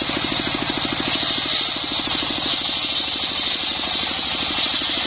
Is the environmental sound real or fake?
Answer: real